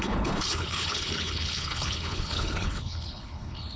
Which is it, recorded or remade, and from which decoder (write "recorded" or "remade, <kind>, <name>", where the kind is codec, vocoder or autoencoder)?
remade, codec, HILCodec